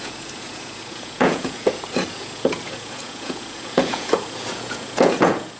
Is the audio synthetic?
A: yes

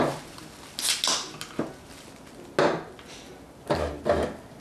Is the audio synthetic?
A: no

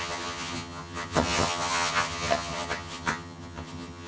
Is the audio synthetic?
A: yes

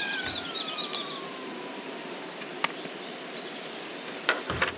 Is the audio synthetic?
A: no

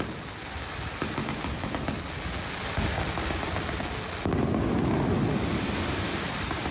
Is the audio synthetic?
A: no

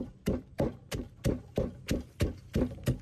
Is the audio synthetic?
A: yes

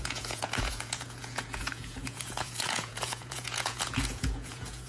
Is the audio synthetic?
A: yes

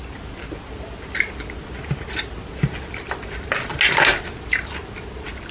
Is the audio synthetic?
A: no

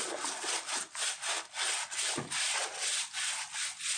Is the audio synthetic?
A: no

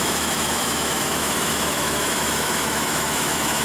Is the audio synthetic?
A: yes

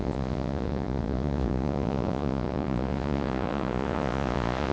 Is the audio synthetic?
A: yes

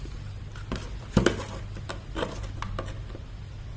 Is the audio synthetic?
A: no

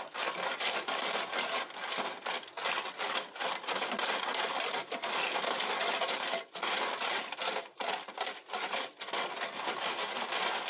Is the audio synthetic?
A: no